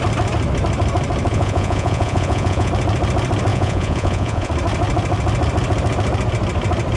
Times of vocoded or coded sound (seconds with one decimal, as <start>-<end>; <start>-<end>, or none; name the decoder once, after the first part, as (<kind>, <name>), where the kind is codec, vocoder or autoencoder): 1.3-2.7 (vocoder, Vocos); 3.5-4.5